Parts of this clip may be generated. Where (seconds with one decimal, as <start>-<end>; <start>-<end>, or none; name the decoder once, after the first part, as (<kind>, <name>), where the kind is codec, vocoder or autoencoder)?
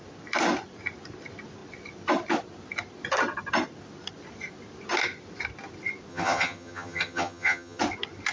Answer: 6.1-7.8 (vocoder, HiFi-GAN)